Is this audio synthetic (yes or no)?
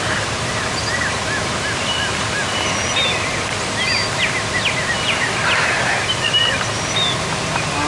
no